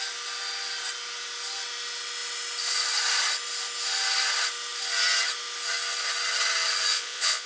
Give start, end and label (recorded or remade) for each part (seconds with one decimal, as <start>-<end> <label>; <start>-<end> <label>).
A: 0.0-6.9 recorded; 6.9-7.5 remade

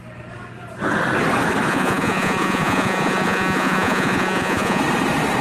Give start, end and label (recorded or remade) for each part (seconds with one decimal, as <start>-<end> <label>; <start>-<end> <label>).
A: 0.0-1.7 recorded; 1.7-4.8 remade; 4.8-5.4 recorded

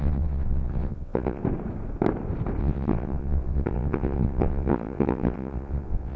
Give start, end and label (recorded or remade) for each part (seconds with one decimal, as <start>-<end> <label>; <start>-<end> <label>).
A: 0.0-1.4 remade; 1.4-2.6 recorded; 2.6-6.2 remade

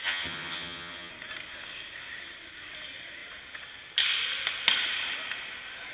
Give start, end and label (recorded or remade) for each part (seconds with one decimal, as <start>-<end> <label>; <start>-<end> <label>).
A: 0.0-1.1 remade; 1.1-5.9 recorded

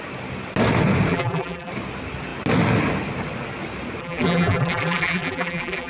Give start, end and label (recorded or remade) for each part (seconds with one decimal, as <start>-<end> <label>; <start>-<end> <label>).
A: 0.0-1.1 recorded; 1.1-1.7 remade; 1.7-4.0 recorded; 4.0-5.9 remade

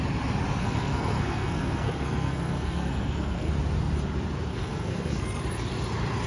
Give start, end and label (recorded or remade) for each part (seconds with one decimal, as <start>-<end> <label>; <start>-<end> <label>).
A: 0.0-0.6 recorded; 0.6-3.5 remade; 3.5-4.5 recorded; 4.5-5.4 remade; 5.4-6.3 recorded

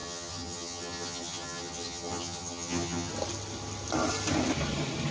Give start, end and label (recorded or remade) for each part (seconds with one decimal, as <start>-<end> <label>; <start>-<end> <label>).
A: 0.0-3.1 remade; 3.1-5.1 recorded

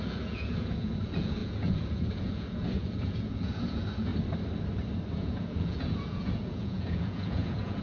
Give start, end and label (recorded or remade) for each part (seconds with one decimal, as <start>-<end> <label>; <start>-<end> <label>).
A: 0.0-4.1 remade; 4.1-5.2 recorded; 5.2-7.8 remade